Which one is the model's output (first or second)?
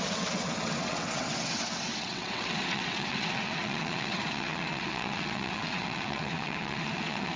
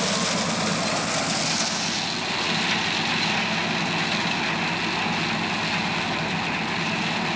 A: first